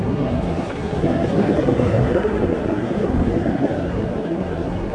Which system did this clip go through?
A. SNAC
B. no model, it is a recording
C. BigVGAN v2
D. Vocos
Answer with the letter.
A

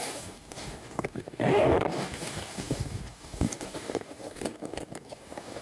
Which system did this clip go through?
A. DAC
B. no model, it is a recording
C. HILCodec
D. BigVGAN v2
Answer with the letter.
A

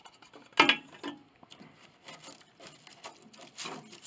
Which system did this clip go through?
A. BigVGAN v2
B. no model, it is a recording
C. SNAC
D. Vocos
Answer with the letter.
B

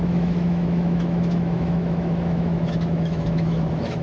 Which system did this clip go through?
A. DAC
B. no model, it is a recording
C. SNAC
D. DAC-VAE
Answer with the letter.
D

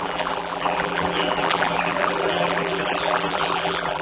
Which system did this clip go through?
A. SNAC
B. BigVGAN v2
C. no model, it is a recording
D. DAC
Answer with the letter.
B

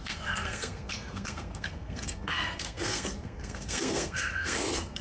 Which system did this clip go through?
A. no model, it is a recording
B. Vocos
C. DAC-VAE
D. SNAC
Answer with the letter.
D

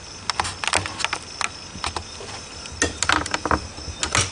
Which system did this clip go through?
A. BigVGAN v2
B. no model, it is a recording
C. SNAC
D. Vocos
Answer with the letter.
B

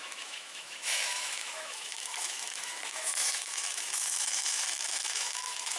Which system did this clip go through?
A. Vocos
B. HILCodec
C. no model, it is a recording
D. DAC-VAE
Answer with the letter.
D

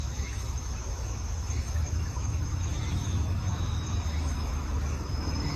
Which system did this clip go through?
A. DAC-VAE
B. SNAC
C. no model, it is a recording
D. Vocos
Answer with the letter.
A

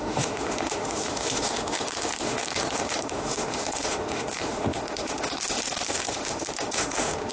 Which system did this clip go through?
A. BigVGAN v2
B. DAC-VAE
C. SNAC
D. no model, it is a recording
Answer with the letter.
B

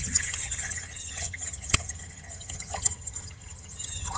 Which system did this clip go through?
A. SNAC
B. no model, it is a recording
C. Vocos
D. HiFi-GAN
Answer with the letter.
D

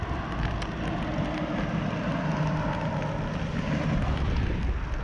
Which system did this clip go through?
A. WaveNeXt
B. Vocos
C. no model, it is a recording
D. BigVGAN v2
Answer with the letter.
C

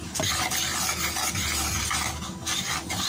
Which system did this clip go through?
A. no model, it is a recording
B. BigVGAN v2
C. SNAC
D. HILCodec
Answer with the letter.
A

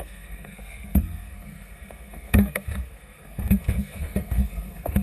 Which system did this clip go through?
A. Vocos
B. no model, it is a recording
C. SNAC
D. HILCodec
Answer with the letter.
C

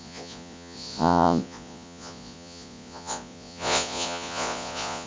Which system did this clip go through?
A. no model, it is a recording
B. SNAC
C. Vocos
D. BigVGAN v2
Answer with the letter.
C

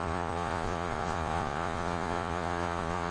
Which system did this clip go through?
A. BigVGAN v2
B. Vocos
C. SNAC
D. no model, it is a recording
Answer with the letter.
B